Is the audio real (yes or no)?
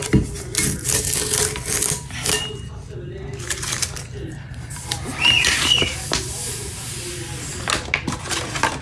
yes